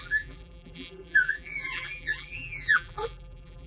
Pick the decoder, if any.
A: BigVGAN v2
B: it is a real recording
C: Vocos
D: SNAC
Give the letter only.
A